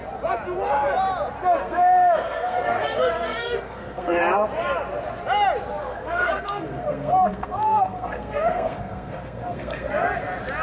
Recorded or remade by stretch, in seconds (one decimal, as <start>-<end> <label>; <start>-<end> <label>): 0.0-1.6 recorded; 1.6-4.2 remade; 4.2-5.8 recorded; 5.8-9.9 remade; 9.9-10.6 recorded